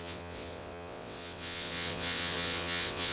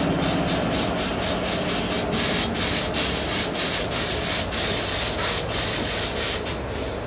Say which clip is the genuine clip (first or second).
second